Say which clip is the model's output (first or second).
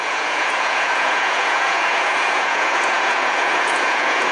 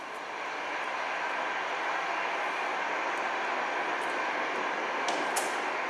first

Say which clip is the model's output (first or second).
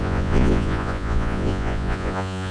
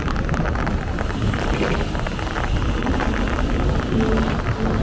first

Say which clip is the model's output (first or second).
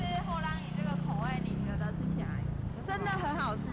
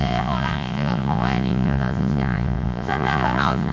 second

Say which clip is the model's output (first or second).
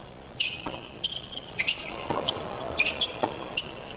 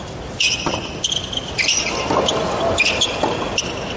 first